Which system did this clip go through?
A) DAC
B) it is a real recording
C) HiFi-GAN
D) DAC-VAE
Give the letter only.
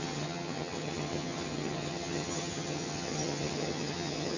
C